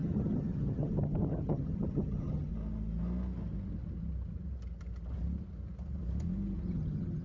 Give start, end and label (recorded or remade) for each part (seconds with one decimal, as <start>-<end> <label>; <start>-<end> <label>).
0.0-2.5 remade; 2.5-6.7 recorded; 6.7-7.2 remade